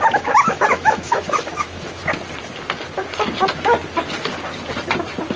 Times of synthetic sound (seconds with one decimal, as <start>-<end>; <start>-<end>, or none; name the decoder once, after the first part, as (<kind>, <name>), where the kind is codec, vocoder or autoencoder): 0.0-2.0 (autoencoder, DAC-VAE)